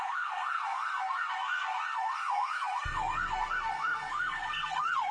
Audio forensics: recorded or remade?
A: remade